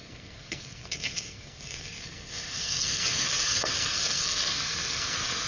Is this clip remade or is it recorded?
remade